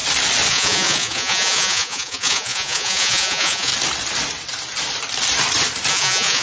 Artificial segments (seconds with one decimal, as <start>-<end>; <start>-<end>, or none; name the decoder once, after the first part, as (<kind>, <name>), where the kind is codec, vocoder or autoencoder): 0.5-3.7 (vocoder, Vocos); 5.9-6.4